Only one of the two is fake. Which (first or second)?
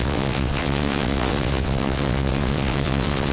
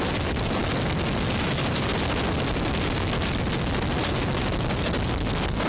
first